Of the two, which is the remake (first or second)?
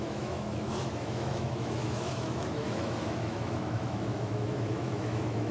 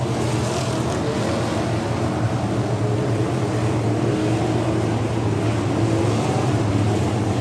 first